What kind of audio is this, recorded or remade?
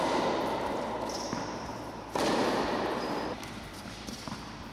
remade